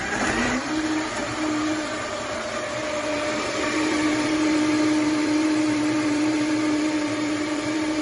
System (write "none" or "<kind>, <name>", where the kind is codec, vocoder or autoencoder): vocoder, BigVGAN v2